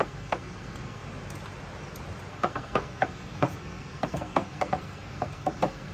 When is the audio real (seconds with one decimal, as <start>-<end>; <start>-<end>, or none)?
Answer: 1.0-2.3